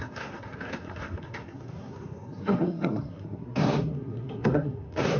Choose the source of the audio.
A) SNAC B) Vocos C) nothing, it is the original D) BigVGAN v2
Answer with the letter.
A